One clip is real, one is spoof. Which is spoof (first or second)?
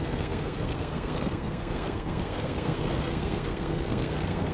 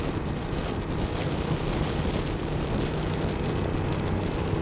first